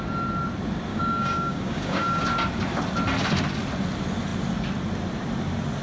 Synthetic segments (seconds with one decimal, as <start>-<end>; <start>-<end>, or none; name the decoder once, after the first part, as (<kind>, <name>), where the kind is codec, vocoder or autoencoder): 0.9-2.2 (codec, DAC)

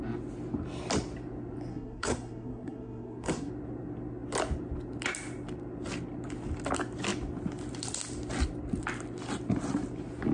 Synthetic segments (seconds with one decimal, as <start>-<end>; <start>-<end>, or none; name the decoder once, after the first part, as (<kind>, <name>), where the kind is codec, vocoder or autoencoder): 1.7-3.5 (codec, SNAC)

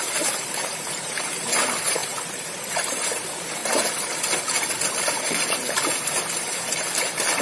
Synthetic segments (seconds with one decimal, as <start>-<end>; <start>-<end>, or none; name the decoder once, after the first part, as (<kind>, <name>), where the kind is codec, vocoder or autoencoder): 0.0-3.6 (vocoder, BigVGAN v2); 5.2-7.4

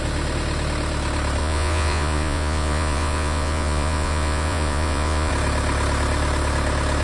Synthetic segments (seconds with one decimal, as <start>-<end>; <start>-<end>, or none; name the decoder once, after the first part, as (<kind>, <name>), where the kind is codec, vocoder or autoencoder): 1.4-5.3 (vocoder, Vocos)

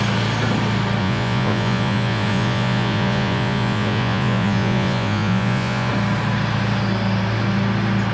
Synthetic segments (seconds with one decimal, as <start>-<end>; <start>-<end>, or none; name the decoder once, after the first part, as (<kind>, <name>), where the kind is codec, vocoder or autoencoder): 1.0-5.9 (vocoder, Vocos)

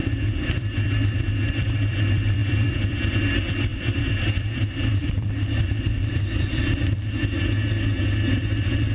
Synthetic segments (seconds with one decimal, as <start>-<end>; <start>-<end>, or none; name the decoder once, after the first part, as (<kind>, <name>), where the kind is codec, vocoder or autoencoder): 0.0-7.0 (vocoder, BigVGAN v2); 8.3-8.9